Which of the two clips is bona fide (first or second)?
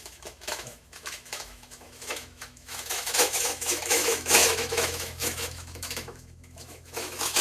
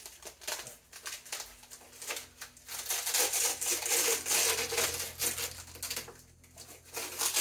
second